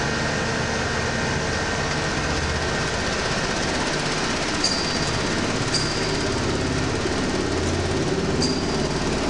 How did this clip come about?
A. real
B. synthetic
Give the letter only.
A